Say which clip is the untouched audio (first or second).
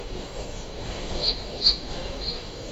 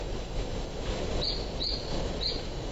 second